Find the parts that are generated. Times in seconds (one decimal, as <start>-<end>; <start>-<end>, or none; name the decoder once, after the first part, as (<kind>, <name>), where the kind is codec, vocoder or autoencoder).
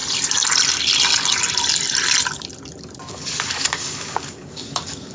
3.1-5.1 (codec, DAC)